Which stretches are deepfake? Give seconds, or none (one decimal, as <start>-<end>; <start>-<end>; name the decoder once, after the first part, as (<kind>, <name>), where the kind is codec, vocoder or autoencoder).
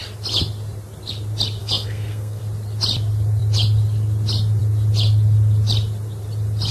1.6-2.4 (codec, SNAC)